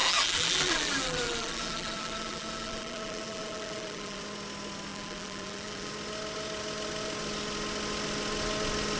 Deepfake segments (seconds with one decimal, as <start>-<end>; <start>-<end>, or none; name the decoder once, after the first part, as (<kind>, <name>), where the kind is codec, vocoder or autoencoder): 0.0-4.2 (vocoder, BigVGAN v2); 4.9-5.9